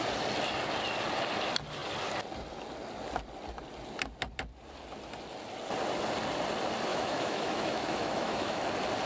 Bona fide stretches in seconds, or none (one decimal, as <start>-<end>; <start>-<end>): 0.0-6.9; 8.6-9.1